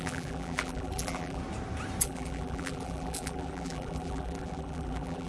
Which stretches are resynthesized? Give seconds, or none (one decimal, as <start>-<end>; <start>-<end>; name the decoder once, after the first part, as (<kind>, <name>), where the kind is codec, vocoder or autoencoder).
0.0-1.4 (vocoder, BigVGAN v2); 2.0-5.3